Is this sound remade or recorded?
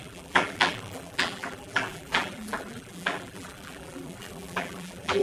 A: remade